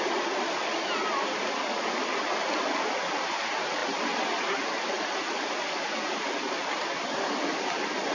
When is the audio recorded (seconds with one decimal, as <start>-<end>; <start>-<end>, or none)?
0.0-8.1